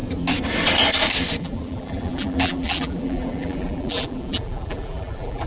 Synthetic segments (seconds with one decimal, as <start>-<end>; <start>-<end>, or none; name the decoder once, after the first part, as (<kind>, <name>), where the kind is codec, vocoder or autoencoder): 1.4-5.5 (vocoder, BigVGAN v2)